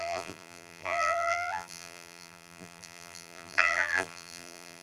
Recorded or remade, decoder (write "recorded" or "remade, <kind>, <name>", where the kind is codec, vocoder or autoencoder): remade, vocoder, BigVGAN v2